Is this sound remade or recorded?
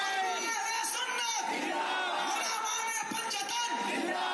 recorded